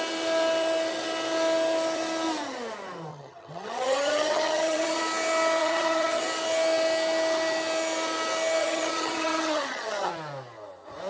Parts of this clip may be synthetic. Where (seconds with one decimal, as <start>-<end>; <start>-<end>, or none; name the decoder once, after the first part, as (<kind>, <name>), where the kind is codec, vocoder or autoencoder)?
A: 3.1-5.0 (vocoder, HiFi-GAN); 5.6-6.2; 8.6-10.1